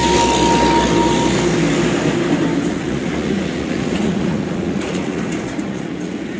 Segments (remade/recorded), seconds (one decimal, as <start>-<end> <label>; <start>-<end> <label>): 0.0-2.7 recorded; 2.7-6.4 remade

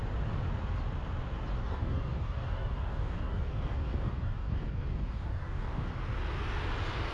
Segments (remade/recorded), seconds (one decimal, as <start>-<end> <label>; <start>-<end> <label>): 0.0-1.6 recorded; 1.6-5.9 remade; 5.9-7.1 recorded

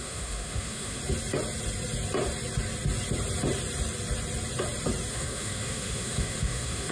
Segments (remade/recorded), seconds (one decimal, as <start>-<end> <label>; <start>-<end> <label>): 0.0-1.0 remade; 1.0-5.1 recorded; 5.1-6.9 remade